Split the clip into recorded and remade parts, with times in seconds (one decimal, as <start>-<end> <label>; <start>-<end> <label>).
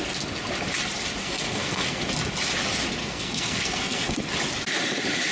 0.0-1.2 recorded; 1.2-2.0 remade; 2.0-3.0 recorded; 3.0-4.2 remade; 4.2-5.3 recorded